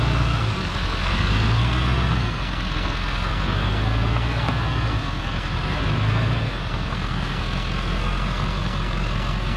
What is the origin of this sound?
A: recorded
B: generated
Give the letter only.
B